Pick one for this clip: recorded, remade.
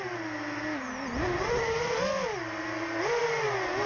recorded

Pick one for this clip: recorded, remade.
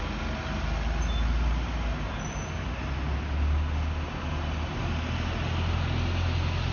recorded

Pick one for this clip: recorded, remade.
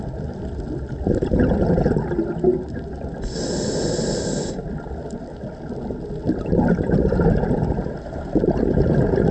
recorded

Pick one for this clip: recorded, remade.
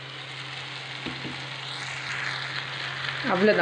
recorded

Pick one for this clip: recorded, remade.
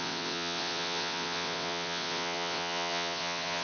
remade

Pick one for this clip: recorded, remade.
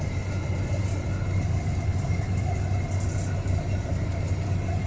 recorded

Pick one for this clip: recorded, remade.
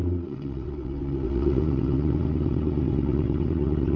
remade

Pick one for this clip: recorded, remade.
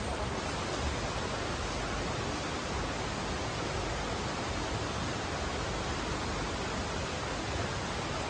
recorded